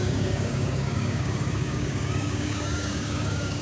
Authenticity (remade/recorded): remade